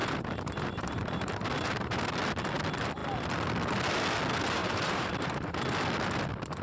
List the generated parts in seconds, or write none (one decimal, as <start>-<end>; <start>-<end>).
0.0-2.0; 4.6-5.6